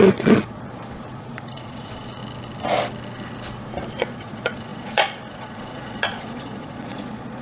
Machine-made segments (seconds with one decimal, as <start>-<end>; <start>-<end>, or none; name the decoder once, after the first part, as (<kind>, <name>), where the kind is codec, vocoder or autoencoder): 0.0-2.2 (vocoder, Vocos); 4.0-7.4